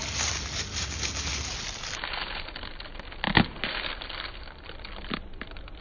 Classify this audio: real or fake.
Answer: real